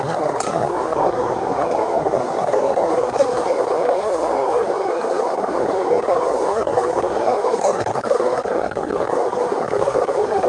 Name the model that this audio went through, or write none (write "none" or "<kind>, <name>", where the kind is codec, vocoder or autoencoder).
codec, SNAC